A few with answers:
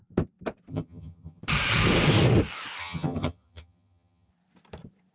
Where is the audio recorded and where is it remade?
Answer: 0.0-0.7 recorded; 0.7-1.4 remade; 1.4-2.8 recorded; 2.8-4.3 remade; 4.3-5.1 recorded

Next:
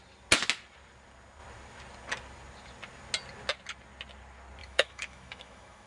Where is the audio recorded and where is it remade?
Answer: 0.0-4.6 recorded; 4.6-5.9 remade